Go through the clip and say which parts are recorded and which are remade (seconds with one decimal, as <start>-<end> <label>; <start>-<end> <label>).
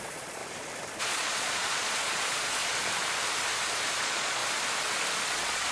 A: 0.0-0.4 remade; 0.4-1.0 recorded; 1.0-2.6 remade; 2.6-4.0 recorded; 4.0-4.4 remade; 4.4-5.3 recorded; 5.3-5.7 remade